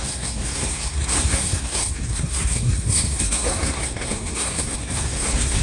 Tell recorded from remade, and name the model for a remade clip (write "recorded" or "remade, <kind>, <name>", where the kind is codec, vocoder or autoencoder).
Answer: remade, codec, SNAC